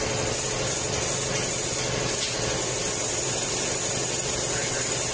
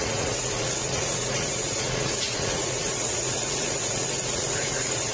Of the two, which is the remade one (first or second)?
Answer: second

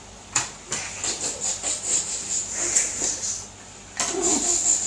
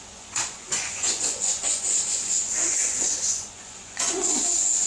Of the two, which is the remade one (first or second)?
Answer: second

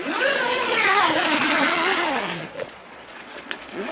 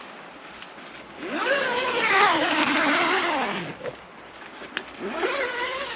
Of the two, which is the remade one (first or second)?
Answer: first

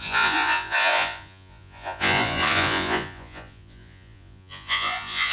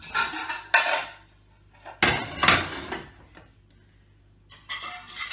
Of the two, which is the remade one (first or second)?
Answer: first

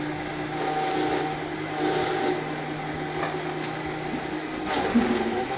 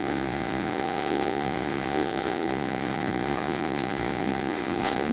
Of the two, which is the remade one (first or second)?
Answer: second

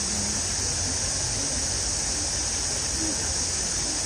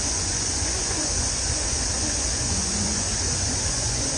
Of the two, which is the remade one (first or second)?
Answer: second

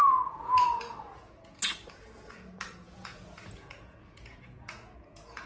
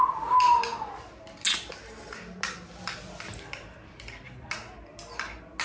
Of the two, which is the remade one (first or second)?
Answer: first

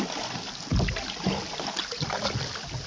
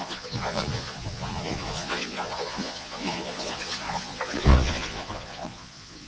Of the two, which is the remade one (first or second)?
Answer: second